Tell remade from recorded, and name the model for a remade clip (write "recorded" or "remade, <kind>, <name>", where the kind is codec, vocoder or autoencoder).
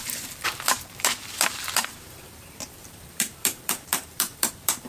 remade, vocoder, BigVGAN v2